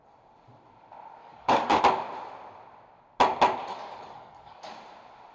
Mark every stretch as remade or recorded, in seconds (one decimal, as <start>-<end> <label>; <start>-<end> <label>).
0.0-1.2 recorded; 1.2-1.8 remade; 1.8-3.7 recorded; 3.7-4.7 remade; 4.7-5.3 recorded